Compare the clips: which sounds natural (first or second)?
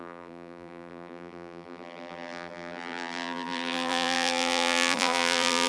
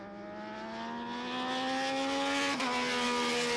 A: second